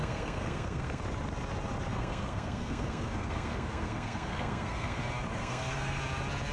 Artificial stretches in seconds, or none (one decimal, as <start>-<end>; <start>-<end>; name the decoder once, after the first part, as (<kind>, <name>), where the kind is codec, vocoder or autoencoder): 0.0-1.0 (codec, SNAC); 1.9-5.0; 5.4-6.0